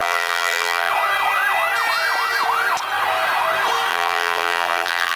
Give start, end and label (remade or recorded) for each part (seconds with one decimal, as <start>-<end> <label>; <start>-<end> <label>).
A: 0.0-0.9 remade; 0.9-3.9 recorded; 3.9-5.2 remade